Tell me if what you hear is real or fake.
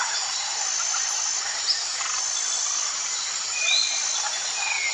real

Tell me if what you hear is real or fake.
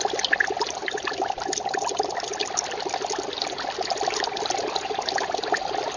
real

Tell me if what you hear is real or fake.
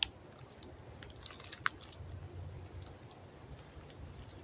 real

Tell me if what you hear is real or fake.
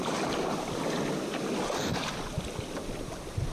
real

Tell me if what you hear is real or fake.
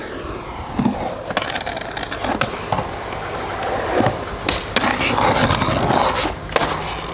real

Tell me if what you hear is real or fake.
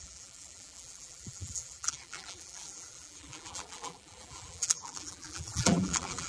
fake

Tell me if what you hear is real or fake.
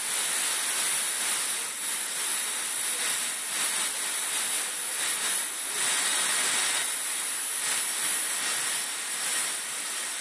real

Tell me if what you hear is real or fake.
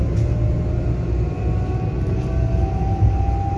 real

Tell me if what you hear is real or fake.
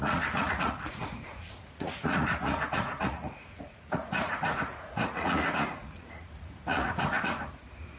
fake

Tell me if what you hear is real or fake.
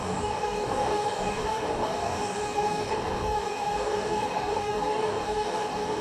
fake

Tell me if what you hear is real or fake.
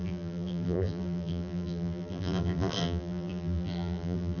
fake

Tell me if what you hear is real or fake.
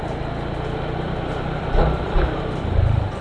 fake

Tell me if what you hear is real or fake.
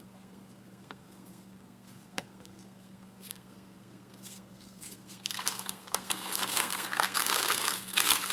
fake